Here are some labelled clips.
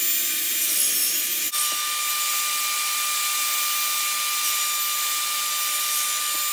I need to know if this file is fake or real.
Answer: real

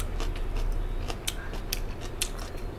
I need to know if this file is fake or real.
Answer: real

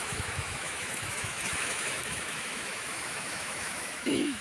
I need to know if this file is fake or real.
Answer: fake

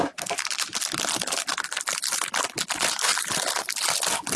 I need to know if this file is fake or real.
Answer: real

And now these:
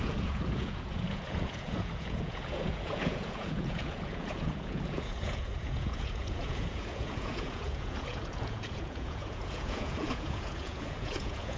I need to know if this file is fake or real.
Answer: fake